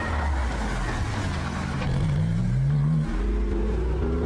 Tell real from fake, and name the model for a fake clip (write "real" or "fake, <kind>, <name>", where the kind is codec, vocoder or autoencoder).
real